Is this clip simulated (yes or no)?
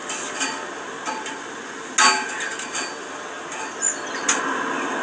no